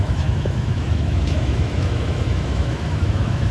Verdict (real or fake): fake